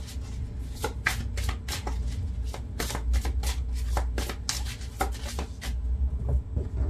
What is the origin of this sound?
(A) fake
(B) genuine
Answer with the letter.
B